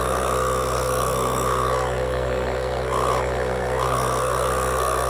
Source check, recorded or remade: remade